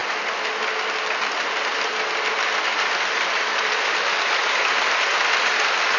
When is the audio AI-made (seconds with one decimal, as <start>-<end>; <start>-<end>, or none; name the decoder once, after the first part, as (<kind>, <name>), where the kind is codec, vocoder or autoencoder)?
none